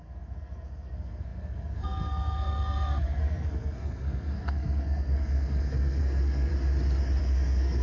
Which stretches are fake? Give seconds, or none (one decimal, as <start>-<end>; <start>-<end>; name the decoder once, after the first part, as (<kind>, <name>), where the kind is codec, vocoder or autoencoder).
0.0-6.5 (codec, SNAC); 7.2-7.8